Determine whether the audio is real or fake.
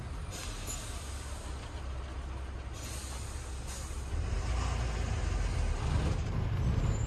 real